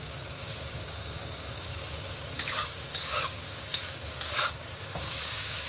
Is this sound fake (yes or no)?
yes